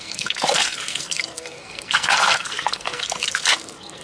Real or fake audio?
fake